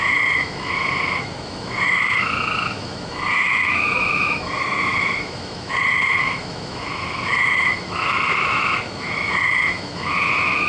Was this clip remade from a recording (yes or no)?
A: yes